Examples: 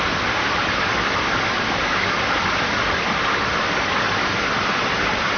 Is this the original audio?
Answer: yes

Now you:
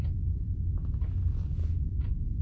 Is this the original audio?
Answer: yes